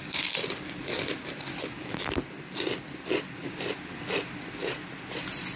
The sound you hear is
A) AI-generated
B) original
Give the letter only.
A